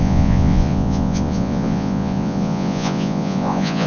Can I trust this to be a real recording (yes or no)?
no